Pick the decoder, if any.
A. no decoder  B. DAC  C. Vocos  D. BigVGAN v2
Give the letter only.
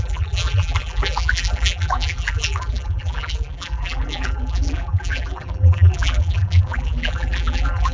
D